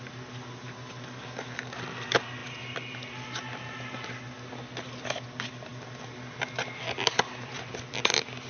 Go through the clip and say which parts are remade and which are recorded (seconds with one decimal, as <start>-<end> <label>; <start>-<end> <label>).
0.0-8.5 recorded